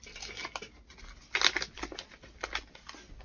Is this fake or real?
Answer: real